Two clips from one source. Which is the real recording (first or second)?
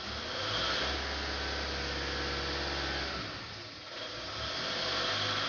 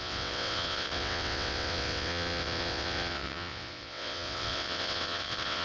first